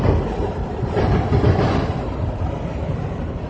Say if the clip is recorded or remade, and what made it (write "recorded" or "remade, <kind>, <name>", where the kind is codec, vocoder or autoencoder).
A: recorded